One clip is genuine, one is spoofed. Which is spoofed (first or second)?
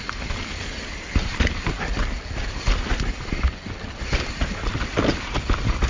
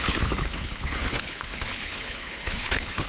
second